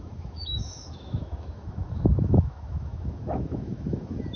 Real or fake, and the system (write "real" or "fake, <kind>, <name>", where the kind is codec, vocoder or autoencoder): fake, autoencoder, DAC-VAE